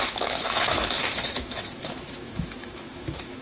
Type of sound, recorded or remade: remade